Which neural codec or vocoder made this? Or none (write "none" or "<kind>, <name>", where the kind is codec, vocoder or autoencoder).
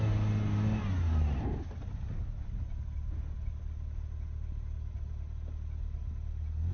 none